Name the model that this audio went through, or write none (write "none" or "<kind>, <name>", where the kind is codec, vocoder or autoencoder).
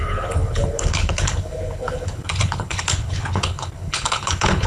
codec, HILCodec